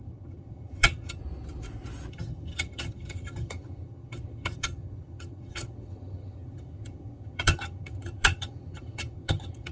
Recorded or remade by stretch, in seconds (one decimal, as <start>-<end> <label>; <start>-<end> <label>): 0.0-1.2 remade; 1.2-2.1 recorded; 2.1-9.7 remade